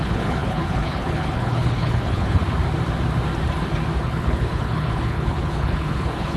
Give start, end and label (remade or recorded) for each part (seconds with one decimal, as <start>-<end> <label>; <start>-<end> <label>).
0.0-2.4 remade; 2.4-4.0 recorded; 4.0-6.4 remade